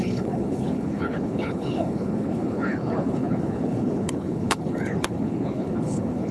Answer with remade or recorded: remade